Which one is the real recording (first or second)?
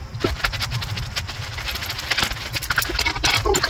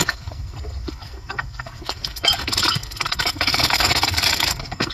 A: first